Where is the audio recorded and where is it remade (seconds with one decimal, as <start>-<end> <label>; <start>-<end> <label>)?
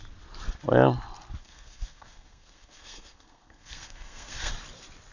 0.0-1.4 recorded; 1.4-4.5 remade; 4.5-5.1 recorded